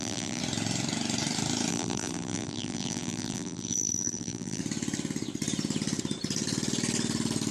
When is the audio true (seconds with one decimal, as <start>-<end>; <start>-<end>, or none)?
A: 0.4-1.7; 4.6-7.5